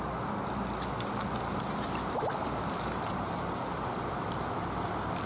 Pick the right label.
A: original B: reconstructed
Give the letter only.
A